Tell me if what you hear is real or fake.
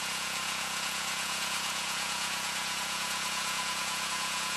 fake